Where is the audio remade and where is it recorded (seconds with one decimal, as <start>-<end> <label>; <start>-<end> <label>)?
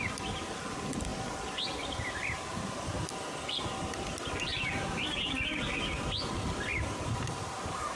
0.0-4.5 recorded; 4.5-5.5 remade; 5.5-6.7 recorded; 6.7-8.0 remade